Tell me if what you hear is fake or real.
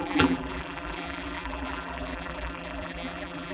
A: fake